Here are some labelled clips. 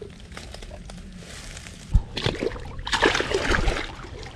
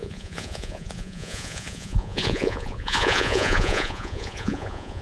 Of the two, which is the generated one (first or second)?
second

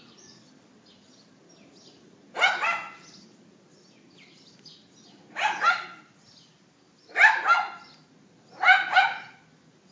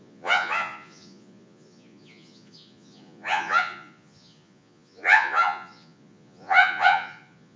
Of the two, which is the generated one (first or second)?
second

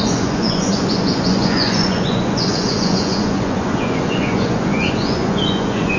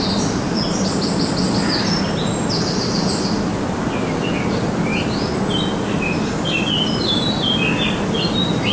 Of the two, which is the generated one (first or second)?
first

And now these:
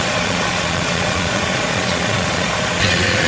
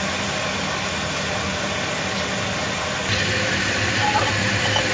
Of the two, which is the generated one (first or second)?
first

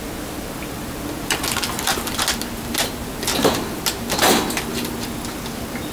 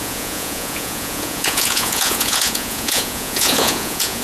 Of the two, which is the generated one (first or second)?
second